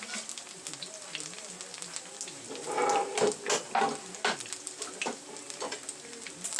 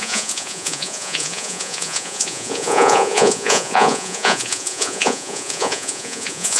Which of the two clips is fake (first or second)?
second